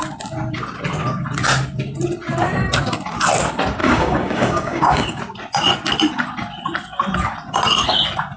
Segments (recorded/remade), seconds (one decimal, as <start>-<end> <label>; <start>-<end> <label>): 0.0-3.8 recorded; 3.8-5.2 remade; 5.2-8.4 recorded